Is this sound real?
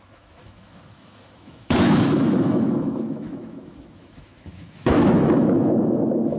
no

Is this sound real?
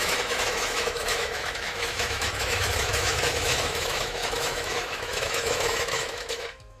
no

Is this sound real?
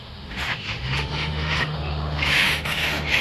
no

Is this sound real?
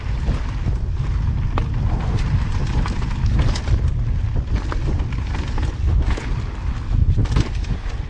yes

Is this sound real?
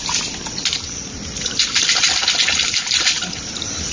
yes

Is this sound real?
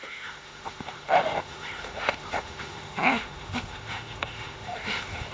no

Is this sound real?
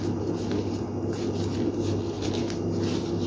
yes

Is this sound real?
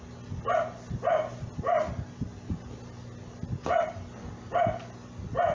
yes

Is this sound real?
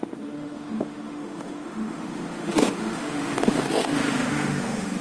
no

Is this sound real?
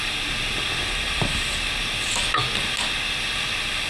yes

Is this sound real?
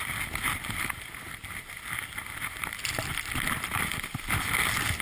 yes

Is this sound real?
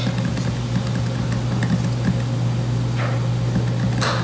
yes